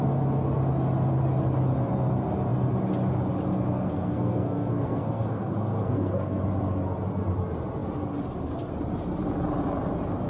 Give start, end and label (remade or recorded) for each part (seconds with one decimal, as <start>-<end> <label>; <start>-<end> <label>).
0.0-3.5 recorded; 3.5-6.4 remade; 6.4-10.3 recorded